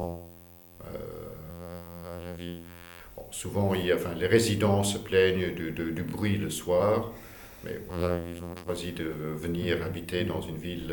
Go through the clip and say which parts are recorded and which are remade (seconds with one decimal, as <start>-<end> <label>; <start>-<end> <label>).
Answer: 0.0-0.8 remade; 0.8-1.5 recorded; 1.5-3.0 remade; 3.0-7.9 recorded; 7.9-8.7 remade; 8.7-10.9 recorded